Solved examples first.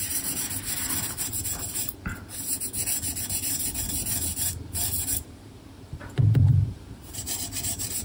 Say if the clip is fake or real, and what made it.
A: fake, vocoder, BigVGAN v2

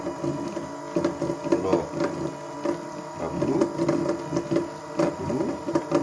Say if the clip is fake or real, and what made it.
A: real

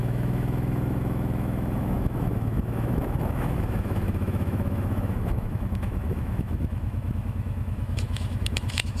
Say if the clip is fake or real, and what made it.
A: fake, autoencoder, DAC-VAE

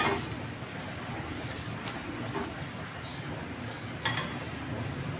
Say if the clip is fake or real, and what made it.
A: real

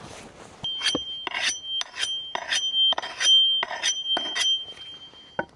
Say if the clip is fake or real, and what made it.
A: real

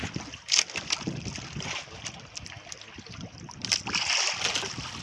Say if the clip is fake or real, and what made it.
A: real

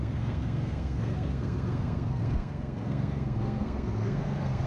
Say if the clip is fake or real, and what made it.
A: fake, codec, SNAC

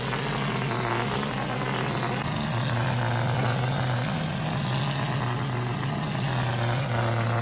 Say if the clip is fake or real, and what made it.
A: real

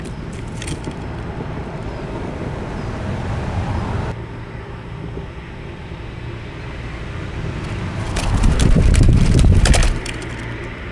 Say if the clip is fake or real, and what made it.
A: fake, vocoder, BigVGAN v2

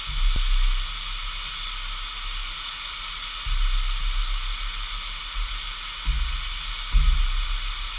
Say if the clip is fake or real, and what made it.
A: real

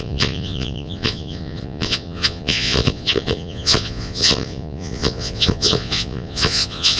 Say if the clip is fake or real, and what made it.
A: fake, vocoder, Vocos